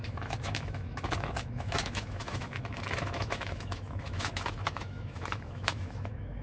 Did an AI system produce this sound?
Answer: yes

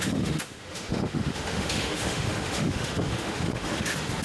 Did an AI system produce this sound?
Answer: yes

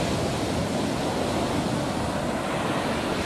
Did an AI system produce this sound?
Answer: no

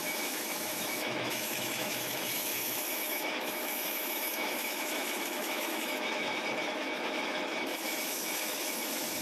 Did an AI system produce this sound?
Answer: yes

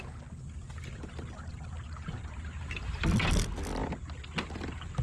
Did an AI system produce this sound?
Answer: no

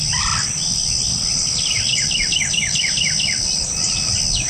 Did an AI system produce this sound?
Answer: no